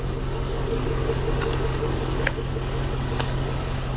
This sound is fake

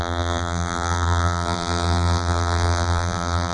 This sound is fake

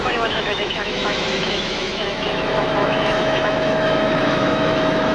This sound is fake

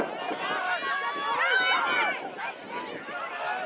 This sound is real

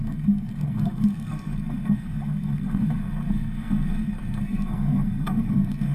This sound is fake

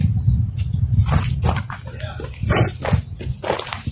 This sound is real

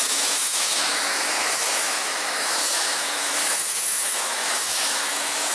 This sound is fake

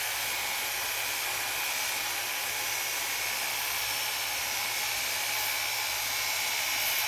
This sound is real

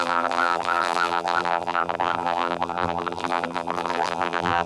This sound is fake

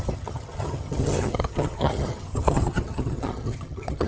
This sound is fake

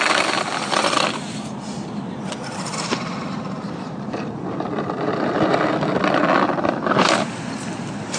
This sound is fake